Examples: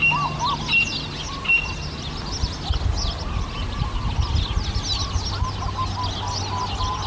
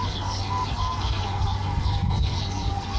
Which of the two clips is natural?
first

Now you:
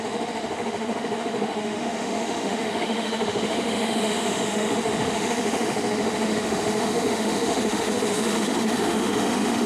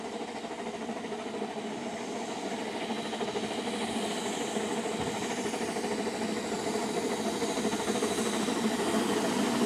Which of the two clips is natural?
second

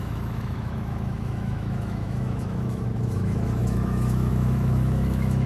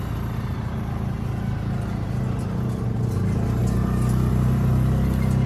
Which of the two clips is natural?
second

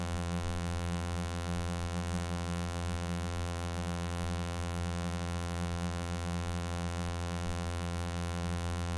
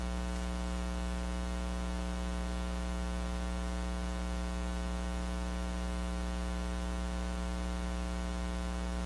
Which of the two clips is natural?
second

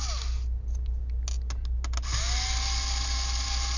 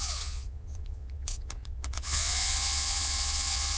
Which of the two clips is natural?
first